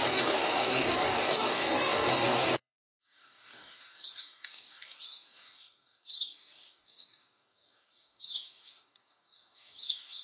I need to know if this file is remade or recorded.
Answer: remade